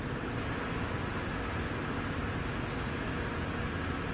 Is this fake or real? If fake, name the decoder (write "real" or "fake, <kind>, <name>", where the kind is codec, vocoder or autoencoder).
real